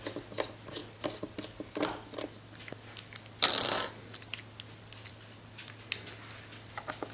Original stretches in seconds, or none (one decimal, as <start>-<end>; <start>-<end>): 0.0-7.1